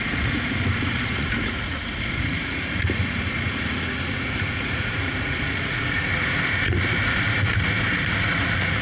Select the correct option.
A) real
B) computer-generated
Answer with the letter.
B